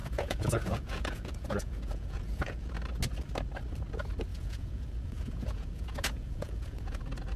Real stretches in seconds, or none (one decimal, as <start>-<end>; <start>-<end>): 2.7-4.3; 7.0-7.4